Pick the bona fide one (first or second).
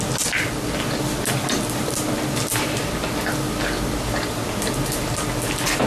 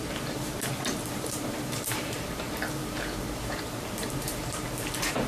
first